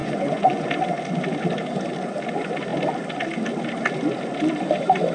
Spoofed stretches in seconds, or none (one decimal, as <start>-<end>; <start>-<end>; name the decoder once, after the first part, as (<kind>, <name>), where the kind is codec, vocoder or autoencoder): 0.0-0.7 (vocoder, Vocos)